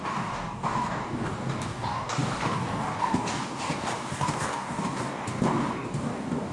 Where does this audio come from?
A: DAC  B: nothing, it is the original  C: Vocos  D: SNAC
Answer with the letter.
A